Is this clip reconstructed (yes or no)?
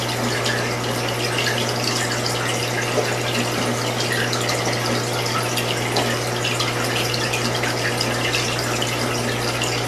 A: no